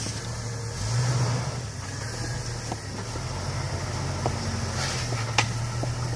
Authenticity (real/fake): real